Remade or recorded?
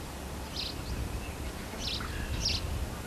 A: recorded